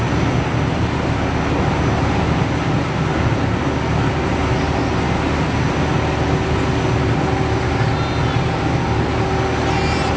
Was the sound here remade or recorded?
recorded